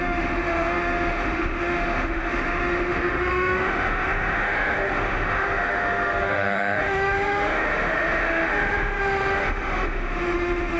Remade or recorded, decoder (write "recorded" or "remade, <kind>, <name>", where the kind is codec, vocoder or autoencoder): remade, autoencoder, DAC-VAE